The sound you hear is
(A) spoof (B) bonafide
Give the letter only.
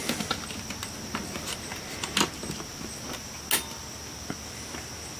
B